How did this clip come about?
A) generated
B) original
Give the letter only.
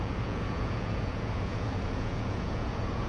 A